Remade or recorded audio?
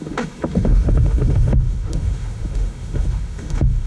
remade